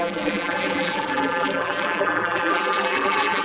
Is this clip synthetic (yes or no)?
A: yes